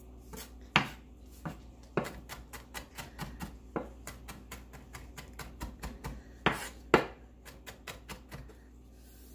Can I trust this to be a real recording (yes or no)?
yes